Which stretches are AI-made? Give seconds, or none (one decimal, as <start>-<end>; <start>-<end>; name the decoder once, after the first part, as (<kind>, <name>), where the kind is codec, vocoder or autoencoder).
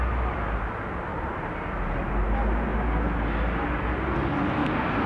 1.1-2.1 (vocoder, BigVGAN v2); 4.6-5.1